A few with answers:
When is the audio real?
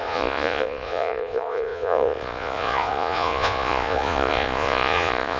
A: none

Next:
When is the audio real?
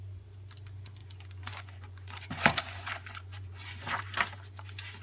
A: 0.0-1.0; 4.0-5.0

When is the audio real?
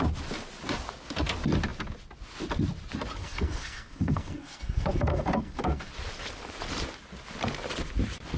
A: 0.0-3.2; 5.9-8.4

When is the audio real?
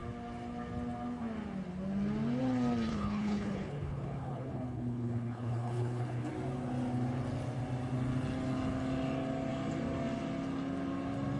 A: 0.0-2.9; 6.3-11.4